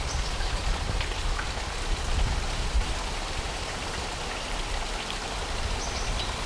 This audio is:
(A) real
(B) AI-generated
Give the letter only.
A